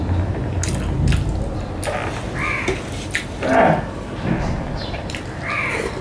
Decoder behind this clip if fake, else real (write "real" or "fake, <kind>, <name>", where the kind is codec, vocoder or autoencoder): real